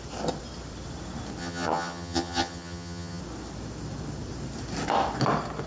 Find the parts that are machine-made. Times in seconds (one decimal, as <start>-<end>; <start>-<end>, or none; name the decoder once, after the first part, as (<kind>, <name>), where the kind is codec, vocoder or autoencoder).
1.4-3.2 (vocoder, HiFi-GAN)